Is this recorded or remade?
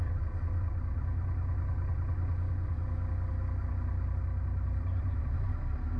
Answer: recorded